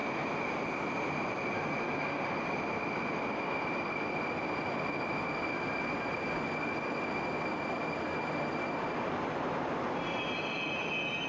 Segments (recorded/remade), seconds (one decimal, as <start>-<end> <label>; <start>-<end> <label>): 0.0-11.3 recorded